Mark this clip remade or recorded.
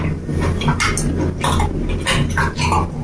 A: recorded